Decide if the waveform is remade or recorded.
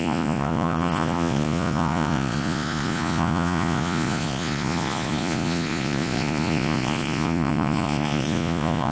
remade